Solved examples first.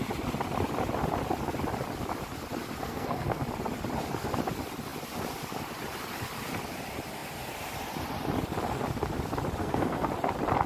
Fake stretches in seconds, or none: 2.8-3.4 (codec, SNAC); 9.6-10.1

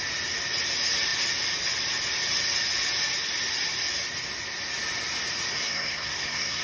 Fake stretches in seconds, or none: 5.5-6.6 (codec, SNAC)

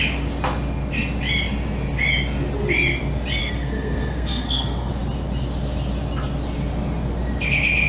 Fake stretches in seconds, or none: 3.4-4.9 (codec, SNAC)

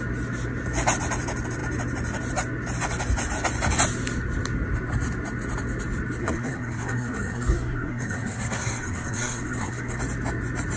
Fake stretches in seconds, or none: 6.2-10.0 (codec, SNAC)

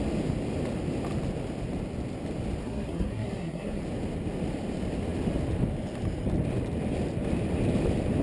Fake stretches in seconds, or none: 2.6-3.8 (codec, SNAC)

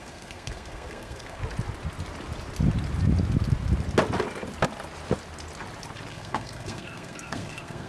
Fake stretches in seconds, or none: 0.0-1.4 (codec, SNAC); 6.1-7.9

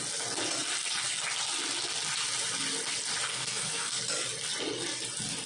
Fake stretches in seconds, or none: 3.3-4.0 (codec, SNAC)